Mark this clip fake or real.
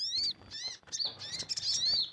real